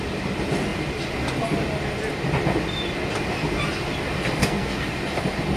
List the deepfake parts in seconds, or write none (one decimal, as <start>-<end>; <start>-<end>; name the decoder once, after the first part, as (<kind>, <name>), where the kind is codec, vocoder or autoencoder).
4.4-4.9 (codec, SNAC)